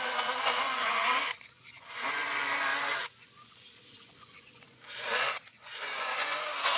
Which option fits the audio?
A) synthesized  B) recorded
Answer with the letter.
A